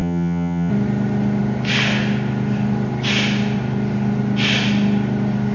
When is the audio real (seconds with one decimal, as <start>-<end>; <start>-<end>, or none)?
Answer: 0.7-5.5